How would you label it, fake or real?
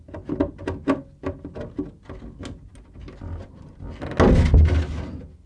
real